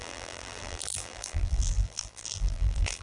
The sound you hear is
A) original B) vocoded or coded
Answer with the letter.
B